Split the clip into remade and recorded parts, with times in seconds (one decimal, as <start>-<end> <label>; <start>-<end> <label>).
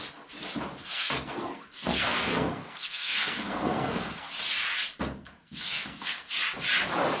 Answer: 0.0-0.8 recorded; 0.8-4.3 remade; 4.3-5.2 recorded; 5.2-6.3 remade; 6.3-7.2 recorded